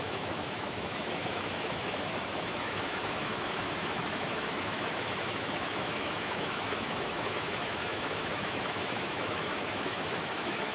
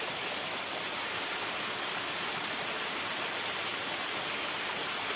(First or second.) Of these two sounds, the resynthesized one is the first